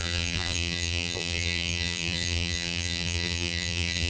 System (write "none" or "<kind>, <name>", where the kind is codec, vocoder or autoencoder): vocoder, BigVGAN v2